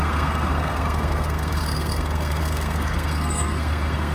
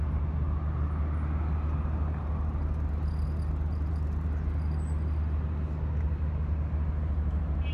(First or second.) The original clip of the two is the second